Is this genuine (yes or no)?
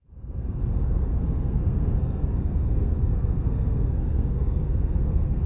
no